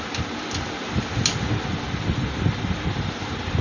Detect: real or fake real